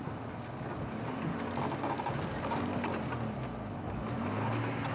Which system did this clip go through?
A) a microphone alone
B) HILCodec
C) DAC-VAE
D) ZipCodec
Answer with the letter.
A